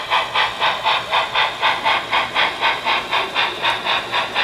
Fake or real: real